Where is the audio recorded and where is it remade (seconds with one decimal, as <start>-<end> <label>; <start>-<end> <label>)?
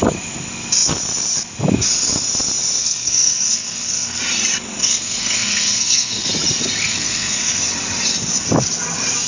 0.0-2.8 recorded; 2.8-4.2 remade; 4.2-4.8 recorded; 4.8-6.3 remade; 6.3-6.8 recorded; 6.8-7.6 remade; 7.6-9.3 recorded